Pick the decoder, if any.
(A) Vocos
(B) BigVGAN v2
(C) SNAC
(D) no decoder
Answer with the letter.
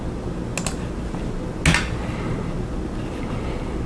D